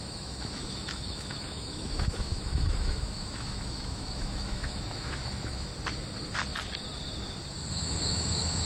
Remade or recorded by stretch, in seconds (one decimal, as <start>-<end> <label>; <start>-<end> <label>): 0.0-5.7 remade; 5.7-7.7 recorded; 7.7-8.7 remade